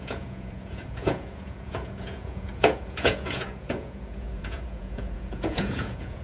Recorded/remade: remade